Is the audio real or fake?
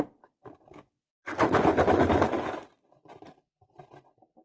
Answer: real